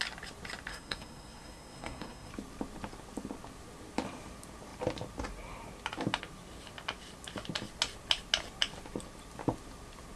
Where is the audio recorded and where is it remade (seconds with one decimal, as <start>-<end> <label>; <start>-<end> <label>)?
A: 0.0-0.7 recorded; 0.7-2.3 remade; 2.3-10.2 recorded